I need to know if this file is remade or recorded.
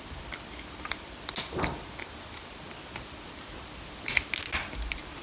recorded